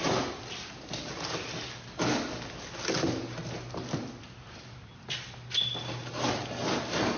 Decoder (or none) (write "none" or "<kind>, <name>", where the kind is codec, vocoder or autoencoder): none